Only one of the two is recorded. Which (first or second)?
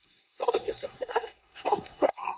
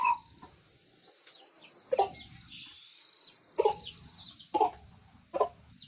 second